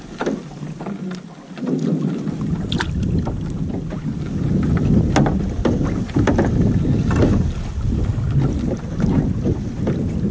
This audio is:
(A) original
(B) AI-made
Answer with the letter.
A